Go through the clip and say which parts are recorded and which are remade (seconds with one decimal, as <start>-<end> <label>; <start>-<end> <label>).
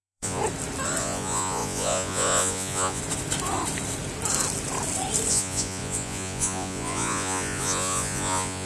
0.0-0.4 remade; 0.4-1.0 recorded; 1.0-3.0 remade; 3.0-5.3 recorded; 5.3-8.7 remade